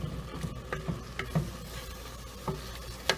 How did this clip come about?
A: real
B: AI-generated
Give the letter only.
A